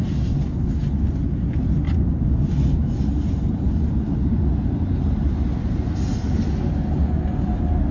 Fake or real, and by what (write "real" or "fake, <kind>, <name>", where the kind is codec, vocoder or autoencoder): real